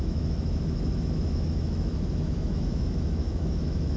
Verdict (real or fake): fake